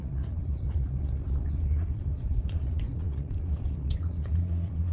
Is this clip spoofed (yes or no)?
yes